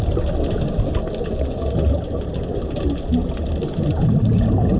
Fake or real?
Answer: real